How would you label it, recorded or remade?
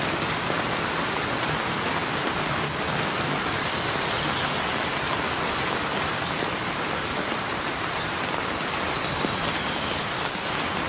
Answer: recorded